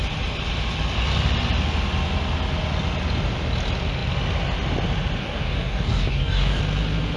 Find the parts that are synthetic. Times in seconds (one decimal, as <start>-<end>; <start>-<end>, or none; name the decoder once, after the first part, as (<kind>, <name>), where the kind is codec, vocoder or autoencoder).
5.2-6.6 (codec, DAC)